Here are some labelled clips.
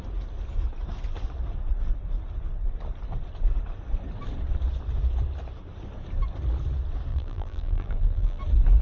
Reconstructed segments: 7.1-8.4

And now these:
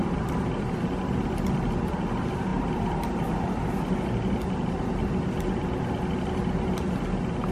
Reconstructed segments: 0.0-0.8; 2.5-5.2